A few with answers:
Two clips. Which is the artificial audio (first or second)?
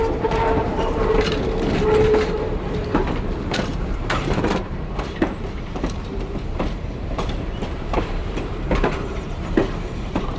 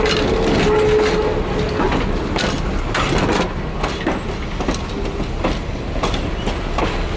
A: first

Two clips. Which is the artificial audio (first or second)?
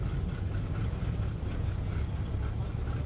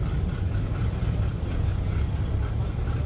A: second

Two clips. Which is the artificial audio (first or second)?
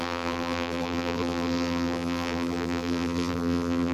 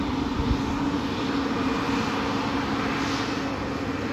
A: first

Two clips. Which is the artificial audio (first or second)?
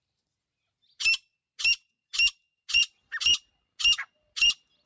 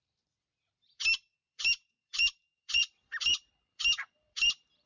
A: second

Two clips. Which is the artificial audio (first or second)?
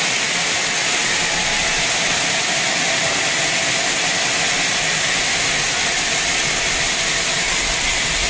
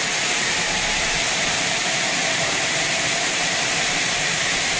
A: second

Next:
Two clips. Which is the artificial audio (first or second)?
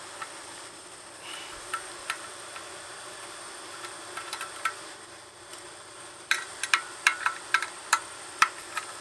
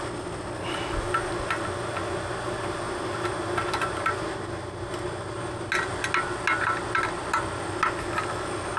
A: first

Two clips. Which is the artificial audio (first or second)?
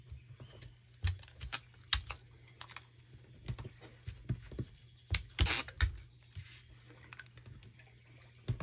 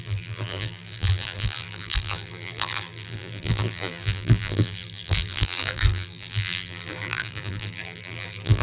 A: second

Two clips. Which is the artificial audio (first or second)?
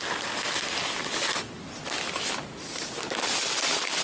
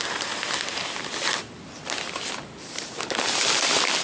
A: second